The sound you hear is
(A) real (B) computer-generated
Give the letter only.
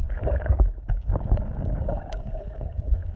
B